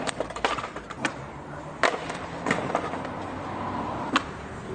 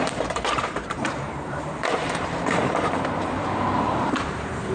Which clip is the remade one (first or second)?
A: second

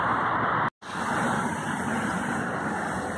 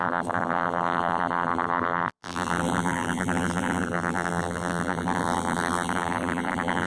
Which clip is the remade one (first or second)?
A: second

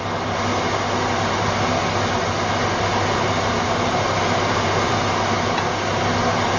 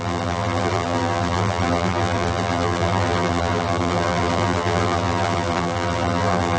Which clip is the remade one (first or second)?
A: second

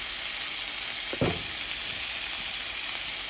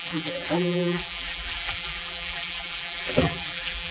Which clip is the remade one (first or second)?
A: second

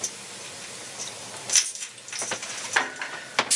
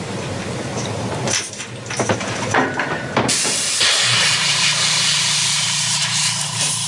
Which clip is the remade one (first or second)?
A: second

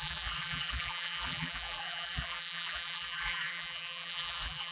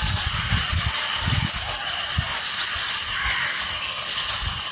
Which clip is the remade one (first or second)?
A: first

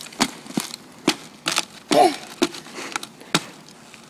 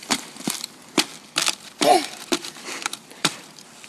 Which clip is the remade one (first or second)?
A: second